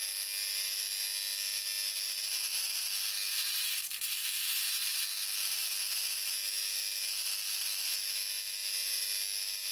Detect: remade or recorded remade